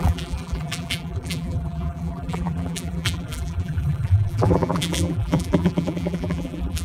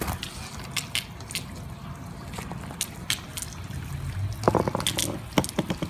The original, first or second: second